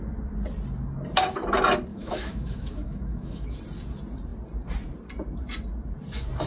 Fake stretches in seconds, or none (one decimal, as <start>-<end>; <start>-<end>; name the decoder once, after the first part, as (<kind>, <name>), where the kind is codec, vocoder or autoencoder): 1.9-3.6 (autoencoder, DAC-VAE)